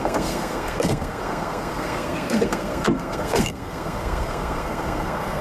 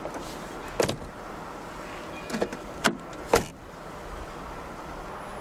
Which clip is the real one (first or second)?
second